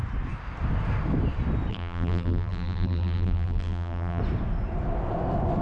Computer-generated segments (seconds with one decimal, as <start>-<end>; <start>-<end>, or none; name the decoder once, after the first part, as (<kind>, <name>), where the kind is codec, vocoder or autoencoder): 1.7-4.2 (vocoder, BigVGAN v2)